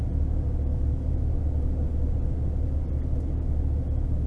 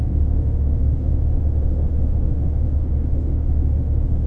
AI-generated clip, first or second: second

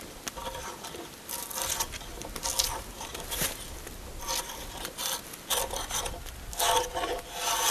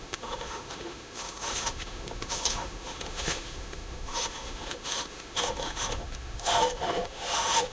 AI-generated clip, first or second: second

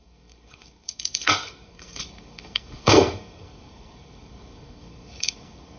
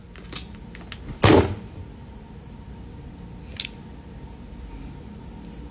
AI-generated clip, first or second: first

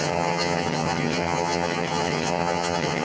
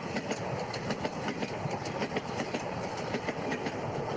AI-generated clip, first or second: first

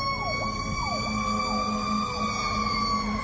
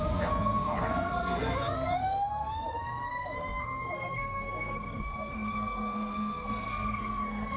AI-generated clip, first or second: second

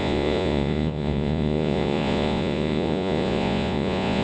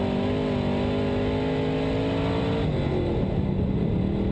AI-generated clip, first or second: first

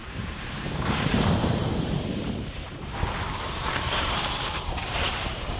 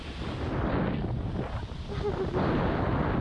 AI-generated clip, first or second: first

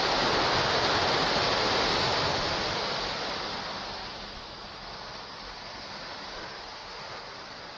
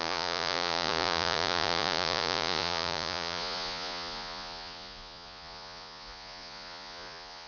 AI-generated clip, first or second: second